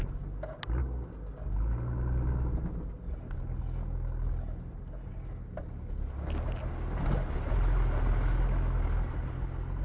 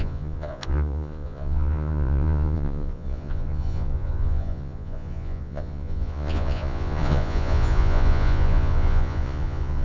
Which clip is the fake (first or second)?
second